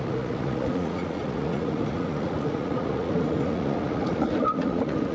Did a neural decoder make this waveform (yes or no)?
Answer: yes